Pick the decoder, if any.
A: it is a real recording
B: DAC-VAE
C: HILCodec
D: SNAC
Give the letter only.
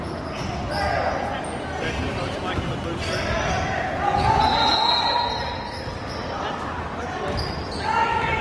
A